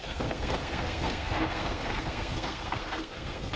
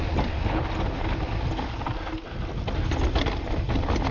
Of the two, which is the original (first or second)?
second